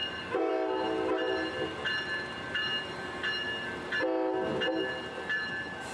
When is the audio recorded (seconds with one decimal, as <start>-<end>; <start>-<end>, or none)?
0.5-5.9